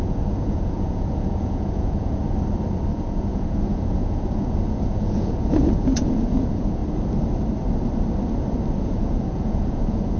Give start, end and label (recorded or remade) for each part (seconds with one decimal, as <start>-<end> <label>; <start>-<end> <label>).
0.0-2.2 remade; 2.2-2.9 recorded; 2.9-6.8 remade; 6.8-8.8 recorded; 8.8-10.2 remade